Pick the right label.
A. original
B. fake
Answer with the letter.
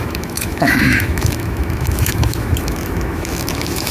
B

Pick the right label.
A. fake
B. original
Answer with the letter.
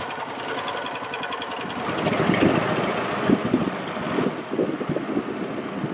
B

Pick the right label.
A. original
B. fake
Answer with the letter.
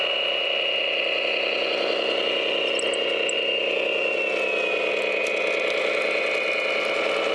A